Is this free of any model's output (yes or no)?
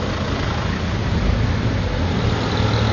yes